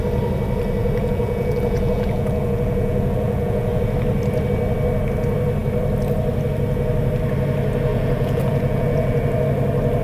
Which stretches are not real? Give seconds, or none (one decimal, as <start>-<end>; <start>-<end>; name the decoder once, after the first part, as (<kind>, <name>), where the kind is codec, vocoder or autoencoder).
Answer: 0.8-3.8 (vocoder, Vocos); 7.9-9.2